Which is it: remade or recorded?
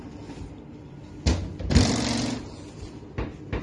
recorded